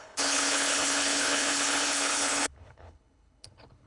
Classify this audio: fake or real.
fake